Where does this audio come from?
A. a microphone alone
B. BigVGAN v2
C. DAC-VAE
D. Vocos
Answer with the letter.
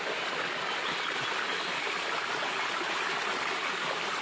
A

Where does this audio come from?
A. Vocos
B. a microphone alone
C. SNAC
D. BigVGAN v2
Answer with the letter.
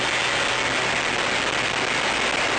B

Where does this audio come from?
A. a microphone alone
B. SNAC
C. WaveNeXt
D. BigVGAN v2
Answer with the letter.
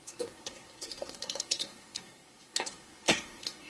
B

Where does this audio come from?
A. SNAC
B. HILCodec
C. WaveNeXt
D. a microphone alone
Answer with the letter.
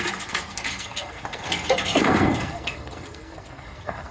A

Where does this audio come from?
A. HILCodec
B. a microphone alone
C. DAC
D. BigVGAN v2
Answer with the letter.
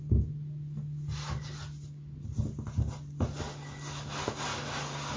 B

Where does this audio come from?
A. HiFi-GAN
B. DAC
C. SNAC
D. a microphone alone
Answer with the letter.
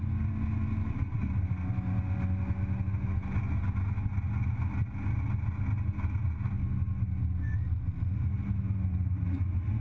D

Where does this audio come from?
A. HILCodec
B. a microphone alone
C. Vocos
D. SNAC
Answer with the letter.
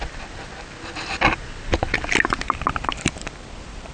B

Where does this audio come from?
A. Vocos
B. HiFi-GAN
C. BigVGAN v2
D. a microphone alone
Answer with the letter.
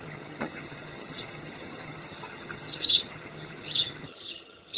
B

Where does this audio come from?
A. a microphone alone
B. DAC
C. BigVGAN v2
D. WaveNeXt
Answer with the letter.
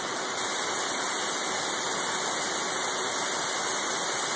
A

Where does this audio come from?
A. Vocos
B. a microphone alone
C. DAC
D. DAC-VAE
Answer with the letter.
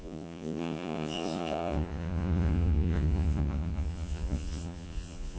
A